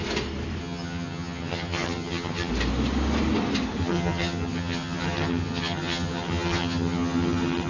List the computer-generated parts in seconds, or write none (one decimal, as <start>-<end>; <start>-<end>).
0.6-2.5; 3.8-7.7